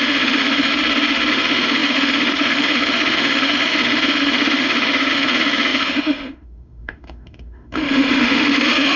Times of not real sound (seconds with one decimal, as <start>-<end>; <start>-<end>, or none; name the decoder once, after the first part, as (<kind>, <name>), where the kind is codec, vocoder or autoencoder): 0.0-0.7 (autoencoder, DAC-VAE); 1.3-9.0